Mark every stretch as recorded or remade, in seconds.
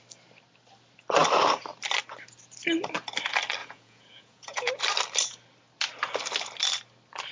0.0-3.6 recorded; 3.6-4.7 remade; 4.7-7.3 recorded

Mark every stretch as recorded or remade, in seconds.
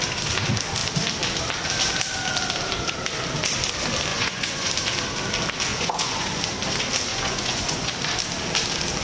0.0-4.1 recorded; 4.1-4.7 remade; 4.7-5.7 recorded; 5.7-6.4 remade; 6.4-7.1 recorded; 7.1-7.9 remade; 7.9-9.0 recorded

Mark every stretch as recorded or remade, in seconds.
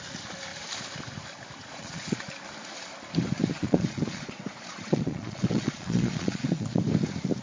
0.0-1.6 recorded; 1.6-2.3 remade; 2.3-3.5 recorded; 3.5-6.8 remade; 6.8-7.4 recorded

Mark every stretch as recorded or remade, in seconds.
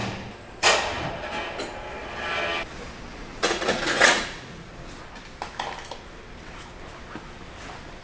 0.0-3.1 recorded; 3.1-4.7 remade; 4.7-8.0 recorded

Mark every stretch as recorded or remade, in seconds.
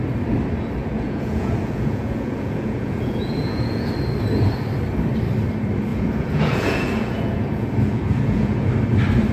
0.0-0.8 recorded; 0.8-3.9 remade; 3.9-5.9 recorded; 5.9-8.7 remade; 8.7-9.3 recorded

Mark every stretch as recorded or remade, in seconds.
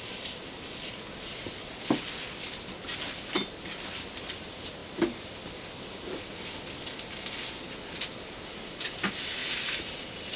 0.0-10.4 recorded